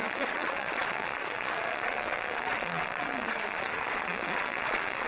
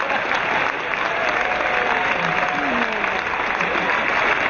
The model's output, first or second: first